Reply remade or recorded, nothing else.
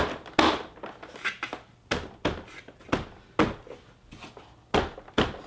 recorded